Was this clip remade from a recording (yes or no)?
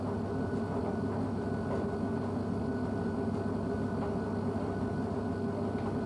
no